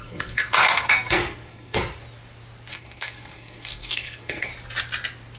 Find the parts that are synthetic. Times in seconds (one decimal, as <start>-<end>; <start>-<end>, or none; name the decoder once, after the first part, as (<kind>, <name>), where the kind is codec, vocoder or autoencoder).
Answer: 0.0-1.8 (codec, SNAC); 2.7-4.5

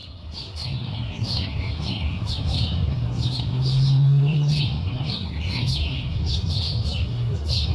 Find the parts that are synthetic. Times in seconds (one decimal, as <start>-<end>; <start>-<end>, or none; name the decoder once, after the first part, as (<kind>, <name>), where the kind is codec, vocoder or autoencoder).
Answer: 0.0-7.7 (codec, SNAC)

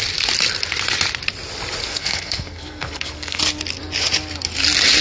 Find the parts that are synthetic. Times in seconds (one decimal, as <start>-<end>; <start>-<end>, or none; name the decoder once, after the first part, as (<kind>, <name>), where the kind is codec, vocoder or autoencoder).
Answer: 1.8-3.4 (codec, SNAC)